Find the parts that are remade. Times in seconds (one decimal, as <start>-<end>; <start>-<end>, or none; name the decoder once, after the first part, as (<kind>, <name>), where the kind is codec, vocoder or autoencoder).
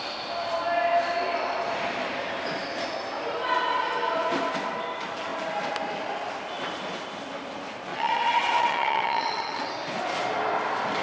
7.9-9.7 (vocoder, WaveNeXt)